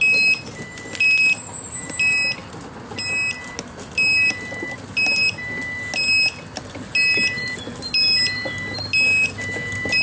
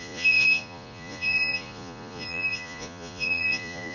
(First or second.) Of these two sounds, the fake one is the second